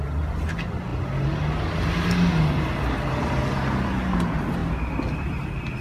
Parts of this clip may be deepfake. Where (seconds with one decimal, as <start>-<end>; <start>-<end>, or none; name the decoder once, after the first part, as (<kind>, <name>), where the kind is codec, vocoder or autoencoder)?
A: none